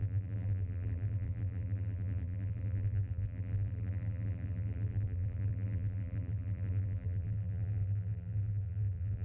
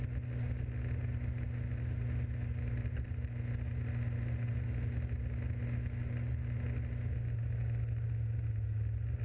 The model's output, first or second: first